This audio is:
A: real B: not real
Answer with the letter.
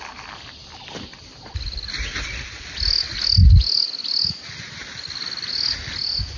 A